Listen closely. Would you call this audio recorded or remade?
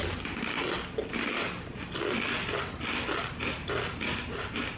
recorded